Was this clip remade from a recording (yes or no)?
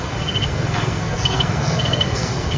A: yes